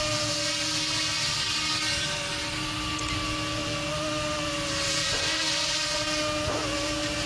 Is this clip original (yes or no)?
yes